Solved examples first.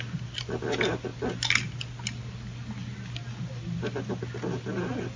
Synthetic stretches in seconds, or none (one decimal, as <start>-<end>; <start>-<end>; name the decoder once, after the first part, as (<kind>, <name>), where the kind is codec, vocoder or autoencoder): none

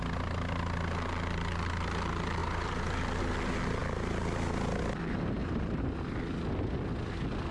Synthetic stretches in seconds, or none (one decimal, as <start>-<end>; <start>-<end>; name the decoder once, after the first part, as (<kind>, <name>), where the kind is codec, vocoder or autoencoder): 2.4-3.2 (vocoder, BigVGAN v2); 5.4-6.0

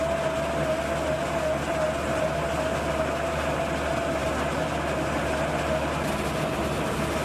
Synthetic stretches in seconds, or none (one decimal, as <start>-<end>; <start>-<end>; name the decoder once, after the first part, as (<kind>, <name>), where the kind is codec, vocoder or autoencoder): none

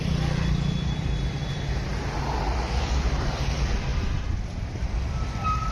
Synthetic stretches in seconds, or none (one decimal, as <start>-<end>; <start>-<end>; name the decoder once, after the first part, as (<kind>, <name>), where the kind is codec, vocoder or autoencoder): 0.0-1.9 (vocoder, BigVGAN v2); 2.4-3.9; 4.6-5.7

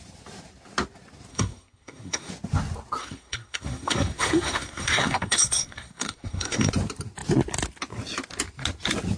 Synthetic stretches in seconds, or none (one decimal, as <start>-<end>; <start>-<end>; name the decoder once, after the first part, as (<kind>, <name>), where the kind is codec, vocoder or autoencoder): 1.3-2.3 (codec, SNAC); 3.0-6.7

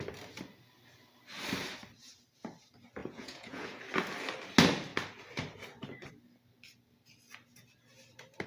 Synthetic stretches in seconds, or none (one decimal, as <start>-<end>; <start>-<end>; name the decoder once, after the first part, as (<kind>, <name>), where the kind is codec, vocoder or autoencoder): 3.0-3.8 (vocoder, Vocos)

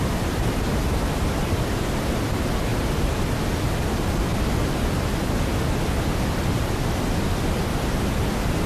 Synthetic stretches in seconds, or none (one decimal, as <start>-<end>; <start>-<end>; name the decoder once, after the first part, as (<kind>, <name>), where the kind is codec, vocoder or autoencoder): none

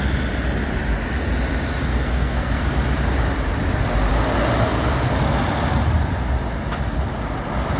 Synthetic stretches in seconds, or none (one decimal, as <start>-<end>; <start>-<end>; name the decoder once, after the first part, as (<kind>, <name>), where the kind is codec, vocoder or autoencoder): 1.9-2.6 (codec, SNAC)